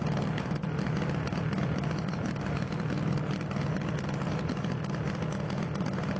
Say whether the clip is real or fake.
real